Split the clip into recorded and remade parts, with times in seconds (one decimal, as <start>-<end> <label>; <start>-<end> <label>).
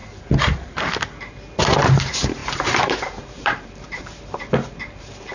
0.0-2.4 recorded; 2.4-4.5 remade; 4.5-5.3 recorded